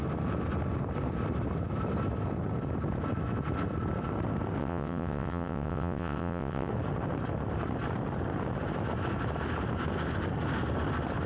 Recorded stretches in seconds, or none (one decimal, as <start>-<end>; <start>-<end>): 0.0-4.6; 6.7-11.3